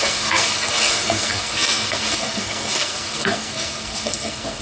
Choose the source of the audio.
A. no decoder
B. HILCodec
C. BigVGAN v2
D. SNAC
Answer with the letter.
D